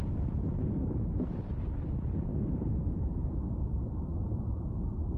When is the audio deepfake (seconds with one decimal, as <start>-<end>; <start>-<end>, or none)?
0.8-1.4; 2.3-3.6; 4.1-4.7